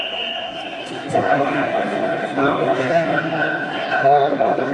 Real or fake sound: fake